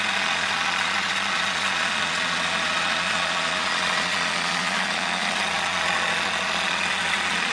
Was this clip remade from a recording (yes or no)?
yes